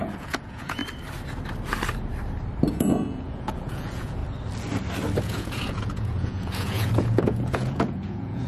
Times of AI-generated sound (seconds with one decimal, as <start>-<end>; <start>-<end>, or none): 0.0-0.8; 2.7-4.2; 5.2-8.5